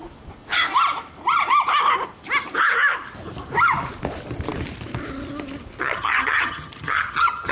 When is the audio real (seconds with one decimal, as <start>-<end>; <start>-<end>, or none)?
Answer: 0.0-5.8